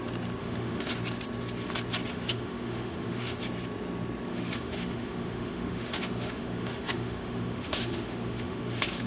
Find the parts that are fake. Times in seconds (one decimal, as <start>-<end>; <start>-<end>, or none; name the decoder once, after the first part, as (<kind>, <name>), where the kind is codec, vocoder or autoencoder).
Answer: 0.4-0.9 (autoencoder, DAC-VAE); 2.1-3.4; 4.3-9.1